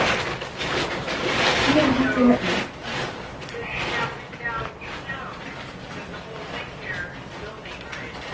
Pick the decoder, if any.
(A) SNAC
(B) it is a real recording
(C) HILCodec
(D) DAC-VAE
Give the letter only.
B